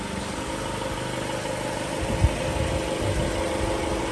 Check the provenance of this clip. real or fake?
real